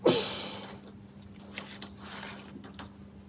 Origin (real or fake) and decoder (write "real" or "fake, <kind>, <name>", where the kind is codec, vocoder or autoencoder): real